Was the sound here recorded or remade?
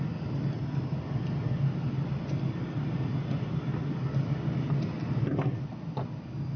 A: recorded